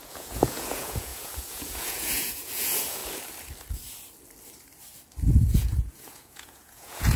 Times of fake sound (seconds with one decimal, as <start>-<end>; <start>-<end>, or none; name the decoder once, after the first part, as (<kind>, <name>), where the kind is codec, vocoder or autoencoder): 0.0-3.0 (vocoder, Vocos); 5.4-7.2